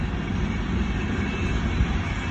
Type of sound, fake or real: real